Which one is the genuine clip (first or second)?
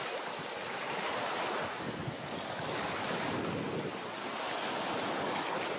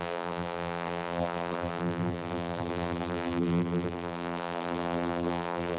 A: first